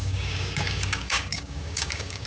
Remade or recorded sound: remade